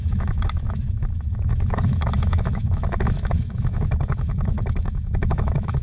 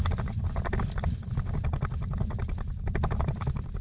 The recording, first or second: second